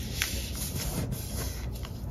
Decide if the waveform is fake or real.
real